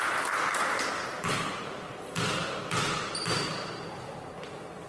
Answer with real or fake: real